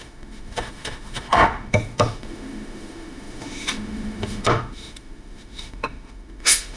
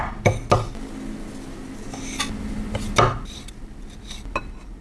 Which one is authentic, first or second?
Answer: second